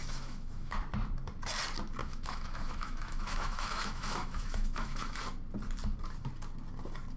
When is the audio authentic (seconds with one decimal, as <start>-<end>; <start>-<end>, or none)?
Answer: 0.8-2.0; 5.2-7.2